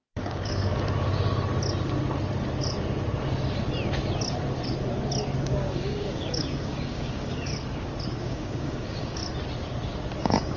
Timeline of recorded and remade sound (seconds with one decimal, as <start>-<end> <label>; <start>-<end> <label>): 0.0-0.7 remade; 0.7-5.4 recorded; 5.4-7.5 remade; 7.5-8.2 recorded; 8.2-9.2 remade; 9.2-10.2 recorded; 10.2-10.6 remade